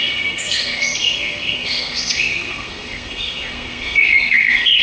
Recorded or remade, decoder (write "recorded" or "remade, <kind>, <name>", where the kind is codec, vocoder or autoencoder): remade, codec, SNAC